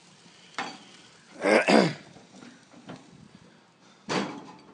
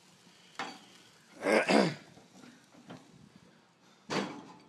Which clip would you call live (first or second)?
second